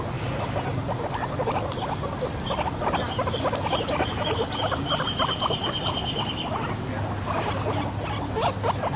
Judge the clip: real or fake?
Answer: real